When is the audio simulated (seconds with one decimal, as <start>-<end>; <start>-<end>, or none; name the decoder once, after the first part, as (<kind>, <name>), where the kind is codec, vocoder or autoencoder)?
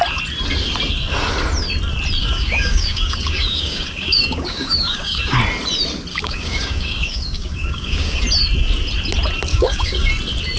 2.2-5.4 (codec, DAC); 6.1-8.2; 9.5-10.1